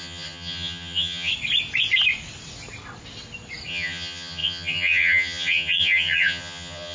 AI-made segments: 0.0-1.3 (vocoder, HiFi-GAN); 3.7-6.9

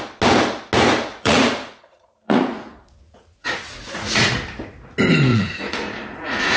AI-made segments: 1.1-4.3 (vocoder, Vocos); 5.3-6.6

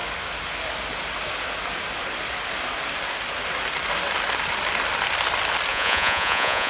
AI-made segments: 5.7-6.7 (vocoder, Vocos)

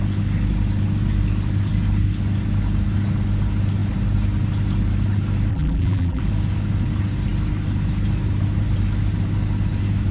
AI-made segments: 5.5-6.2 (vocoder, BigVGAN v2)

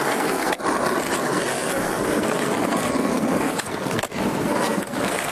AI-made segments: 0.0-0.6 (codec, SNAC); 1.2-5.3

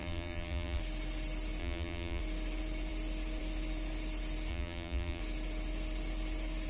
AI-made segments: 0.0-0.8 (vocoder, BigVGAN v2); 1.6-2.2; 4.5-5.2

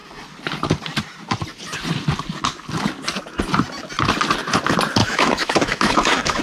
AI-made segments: 5.0-6.4 (autoencoder, DAC-VAE)